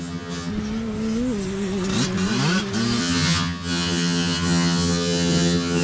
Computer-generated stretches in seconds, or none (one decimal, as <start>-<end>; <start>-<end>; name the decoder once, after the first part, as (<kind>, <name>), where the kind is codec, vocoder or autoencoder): 0.0-0.5 (vocoder, HiFi-GAN); 3.0-5.8